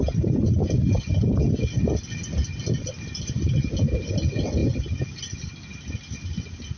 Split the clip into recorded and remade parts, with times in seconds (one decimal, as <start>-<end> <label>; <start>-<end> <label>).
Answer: 0.0-6.8 recorded